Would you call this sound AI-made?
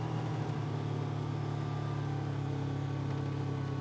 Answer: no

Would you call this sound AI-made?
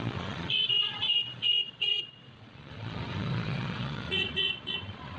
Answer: yes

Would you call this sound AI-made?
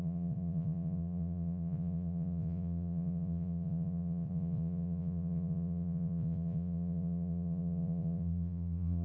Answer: yes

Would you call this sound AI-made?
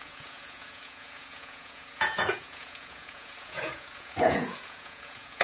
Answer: yes